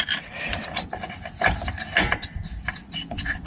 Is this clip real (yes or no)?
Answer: yes